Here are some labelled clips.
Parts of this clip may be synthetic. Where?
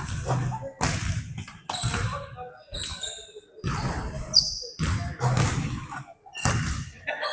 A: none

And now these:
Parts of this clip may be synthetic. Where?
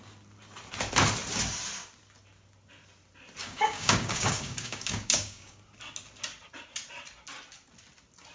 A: 3.4-5.6 (codec, DAC)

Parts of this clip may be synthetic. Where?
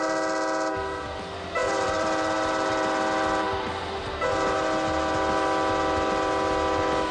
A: 1.6-3.7 (vocoder, BigVGAN v2)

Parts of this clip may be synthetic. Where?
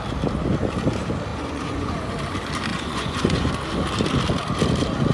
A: 1.3-2.0 (vocoder, Vocos); 2.7-3.5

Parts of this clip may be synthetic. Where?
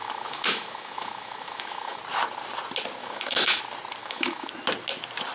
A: 0.0-2.0 (autoencoder, DAC-VAE); 3.0-3.6; 4.0-4.5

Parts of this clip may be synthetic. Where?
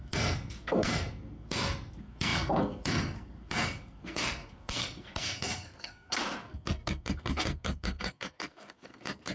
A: 0.0-9.3 (codec, SNAC)